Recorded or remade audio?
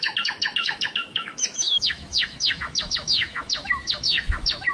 remade